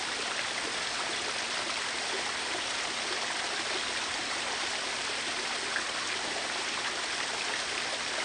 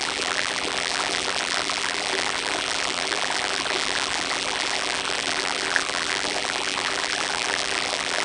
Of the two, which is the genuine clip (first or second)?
first